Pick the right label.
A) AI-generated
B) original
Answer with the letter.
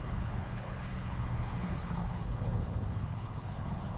A